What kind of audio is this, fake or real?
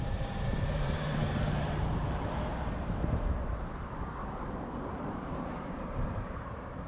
fake